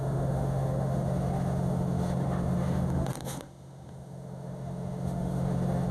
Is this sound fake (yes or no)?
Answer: yes